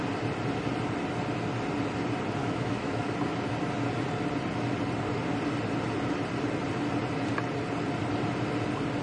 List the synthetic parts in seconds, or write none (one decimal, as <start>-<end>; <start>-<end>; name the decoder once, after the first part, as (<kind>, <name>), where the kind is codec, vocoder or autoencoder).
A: 2.4-3.1 (autoencoder, DAC-VAE)